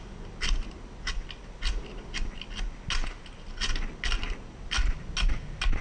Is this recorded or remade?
recorded